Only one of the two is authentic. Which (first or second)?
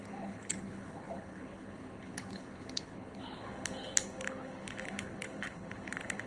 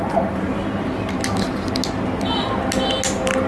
second